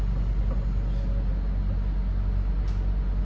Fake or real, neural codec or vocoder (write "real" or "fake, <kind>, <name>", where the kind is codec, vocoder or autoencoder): real